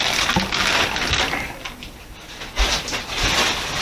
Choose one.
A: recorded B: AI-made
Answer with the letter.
A